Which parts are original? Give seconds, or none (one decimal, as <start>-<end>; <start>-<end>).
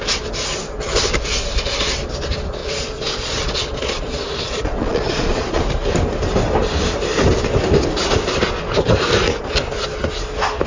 0.0-2.6; 5.6-10.7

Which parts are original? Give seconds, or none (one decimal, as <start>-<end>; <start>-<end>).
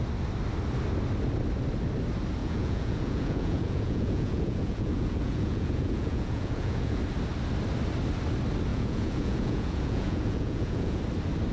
0.0-2.4; 7.0-8.7; 11.0-11.5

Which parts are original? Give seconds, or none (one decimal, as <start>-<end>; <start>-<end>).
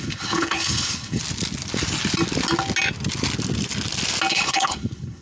1.2-4.3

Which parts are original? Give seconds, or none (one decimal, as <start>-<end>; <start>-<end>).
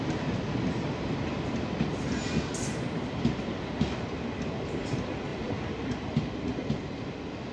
0.0-7.5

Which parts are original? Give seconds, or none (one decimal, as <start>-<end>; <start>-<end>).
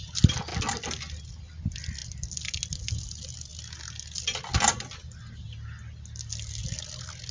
0.0-7.3